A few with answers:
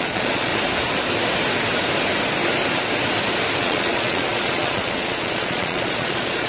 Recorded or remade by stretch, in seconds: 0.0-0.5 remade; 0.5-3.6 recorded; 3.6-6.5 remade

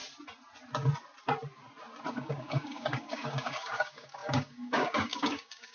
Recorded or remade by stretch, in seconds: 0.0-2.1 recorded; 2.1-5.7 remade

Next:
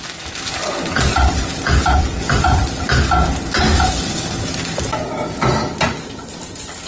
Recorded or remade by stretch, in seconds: 0.0-2.6 remade; 2.6-6.3 recorded; 6.3-6.9 remade